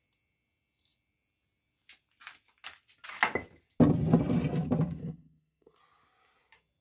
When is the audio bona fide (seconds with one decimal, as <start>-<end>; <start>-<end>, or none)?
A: 0.0-5.0; 5.8-6.8